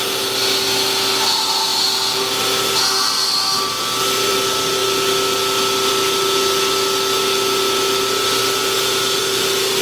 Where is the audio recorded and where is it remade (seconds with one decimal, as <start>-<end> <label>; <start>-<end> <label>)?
0.0-9.8 recorded

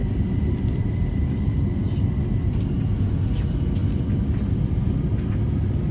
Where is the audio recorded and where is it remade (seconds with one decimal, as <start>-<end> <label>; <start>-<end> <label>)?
0.0-1.7 remade; 1.7-5.9 recorded

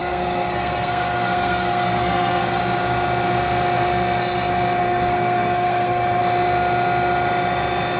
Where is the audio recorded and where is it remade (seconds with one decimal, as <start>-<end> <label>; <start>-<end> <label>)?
0.0-2.6 remade; 2.6-4.8 recorded; 4.8-6.2 remade; 6.2-8.0 recorded

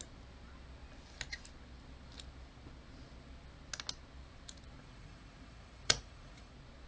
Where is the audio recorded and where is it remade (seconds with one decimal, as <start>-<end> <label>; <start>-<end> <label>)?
0.0-4.8 recorded; 4.8-6.5 remade; 6.5-6.9 recorded